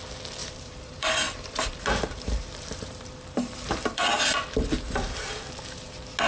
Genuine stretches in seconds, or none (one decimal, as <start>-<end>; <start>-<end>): 0.0-0.4; 4.2-6.3